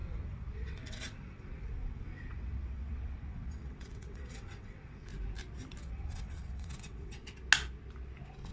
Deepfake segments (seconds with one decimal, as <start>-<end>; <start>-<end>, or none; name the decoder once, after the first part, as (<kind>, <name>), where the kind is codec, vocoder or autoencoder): 0.0-5.1 (vocoder, WaveNeXt); 5.8-7.2